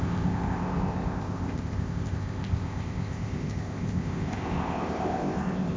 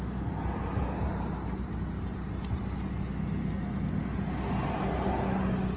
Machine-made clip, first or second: first